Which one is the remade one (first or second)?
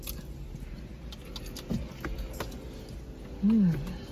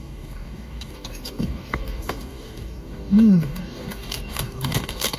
second